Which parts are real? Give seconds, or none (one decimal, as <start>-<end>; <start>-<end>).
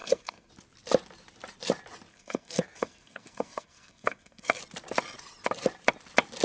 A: 0.5-2.1; 4.6-6.4